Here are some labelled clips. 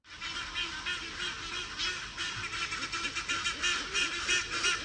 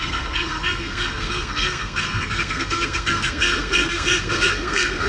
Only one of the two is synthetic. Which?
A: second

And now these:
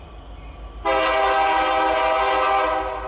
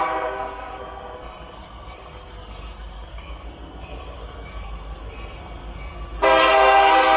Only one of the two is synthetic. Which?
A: second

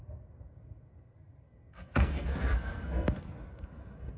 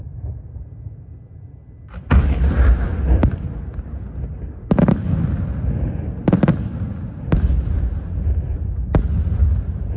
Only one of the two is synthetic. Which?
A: first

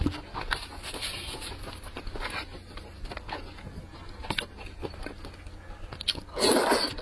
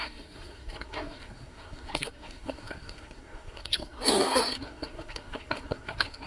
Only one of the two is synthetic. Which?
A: second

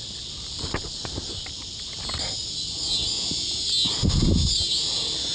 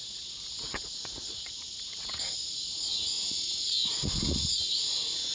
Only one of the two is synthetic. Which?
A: second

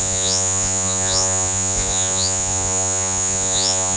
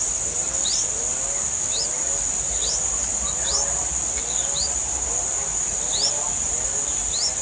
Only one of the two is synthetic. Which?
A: first